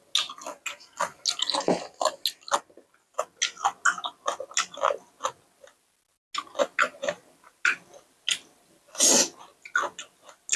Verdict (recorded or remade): recorded